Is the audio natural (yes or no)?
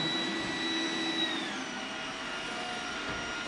yes